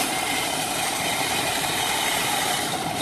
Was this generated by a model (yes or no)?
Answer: yes